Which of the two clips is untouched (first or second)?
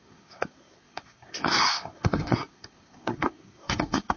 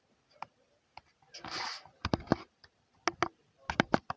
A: second